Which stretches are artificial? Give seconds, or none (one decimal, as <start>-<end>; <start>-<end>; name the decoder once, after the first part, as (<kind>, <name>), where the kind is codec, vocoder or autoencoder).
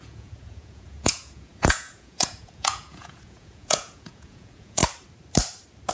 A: 0.0-4.8 (vocoder, Vocos)